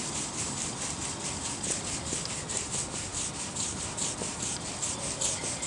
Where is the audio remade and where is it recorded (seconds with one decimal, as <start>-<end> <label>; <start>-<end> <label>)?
0.0-5.7 recorded